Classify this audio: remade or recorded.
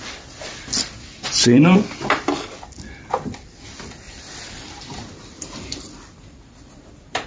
remade